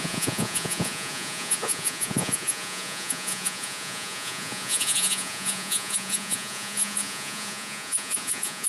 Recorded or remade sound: remade